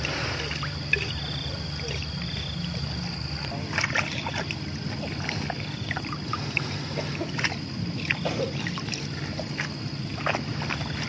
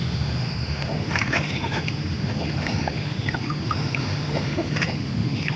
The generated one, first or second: second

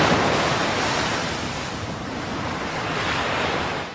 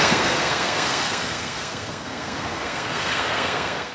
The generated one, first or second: second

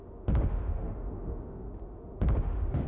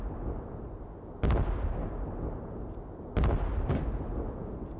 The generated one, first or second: first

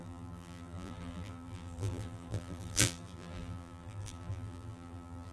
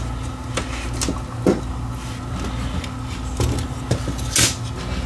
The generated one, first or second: first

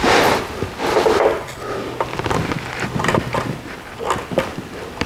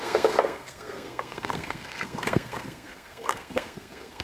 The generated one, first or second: second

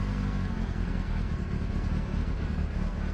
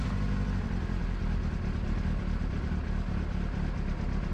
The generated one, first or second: first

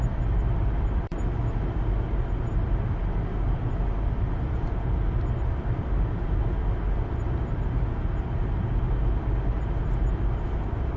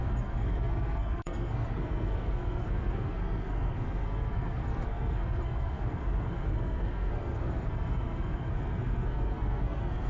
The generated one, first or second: second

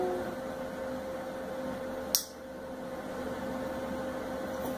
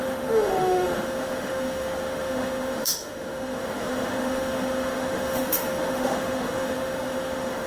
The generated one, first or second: second